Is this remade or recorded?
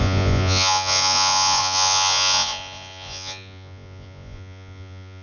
remade